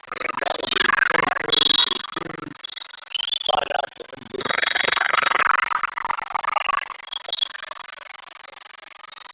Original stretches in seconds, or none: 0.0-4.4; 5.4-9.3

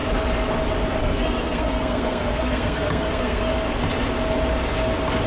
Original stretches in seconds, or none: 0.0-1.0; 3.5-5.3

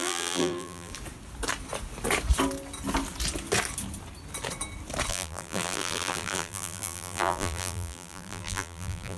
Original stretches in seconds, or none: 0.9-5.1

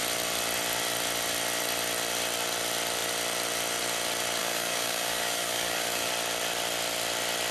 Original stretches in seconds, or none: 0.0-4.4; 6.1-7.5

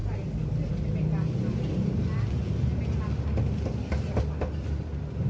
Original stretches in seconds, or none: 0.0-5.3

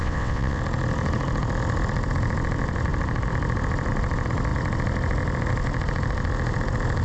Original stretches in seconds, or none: 0.6-7.0

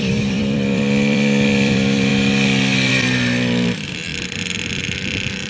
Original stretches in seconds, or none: 2.1-2.9; 4.1-4.8